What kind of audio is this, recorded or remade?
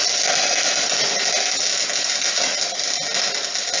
recorded